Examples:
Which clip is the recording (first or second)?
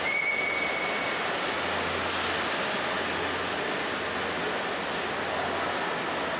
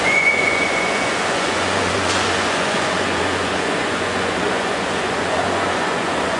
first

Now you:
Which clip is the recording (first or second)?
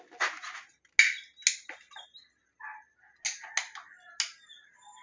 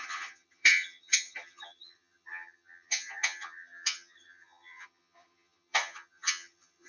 first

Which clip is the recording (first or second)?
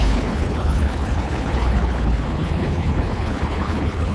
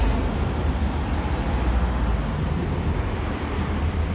second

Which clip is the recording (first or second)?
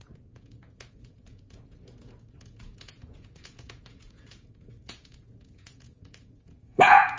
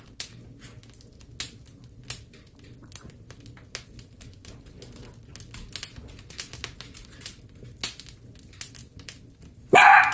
second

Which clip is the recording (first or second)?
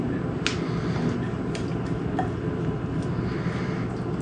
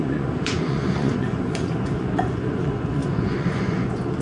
first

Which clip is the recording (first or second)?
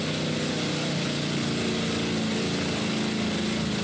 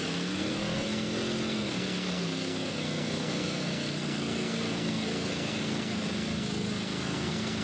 first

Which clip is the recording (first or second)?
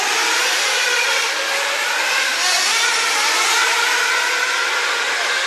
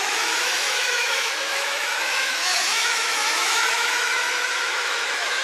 first